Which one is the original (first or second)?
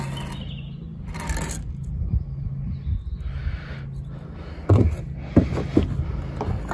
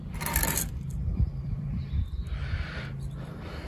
first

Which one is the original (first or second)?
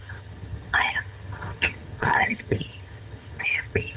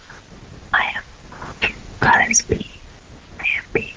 second